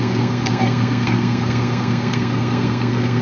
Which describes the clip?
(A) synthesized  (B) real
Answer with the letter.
A